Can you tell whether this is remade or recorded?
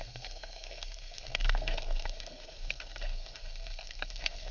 remade